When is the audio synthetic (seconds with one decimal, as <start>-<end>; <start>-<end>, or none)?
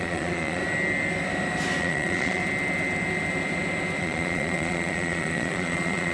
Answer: 0.0-0.6; 1.8-2.4; 4.0-6.1